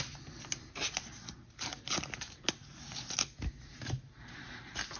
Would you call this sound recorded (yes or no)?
yes